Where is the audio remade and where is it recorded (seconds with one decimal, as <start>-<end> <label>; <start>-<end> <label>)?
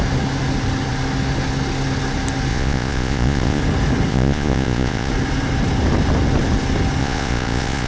0.0-2.5 recorded; 2.5-3.6 remade; 3.6-4.1 recorded; 4.1-5.1 remade; 5.1-7.0 recorded; 7.0-7.9 remade